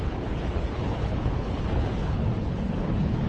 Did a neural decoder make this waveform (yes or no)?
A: yes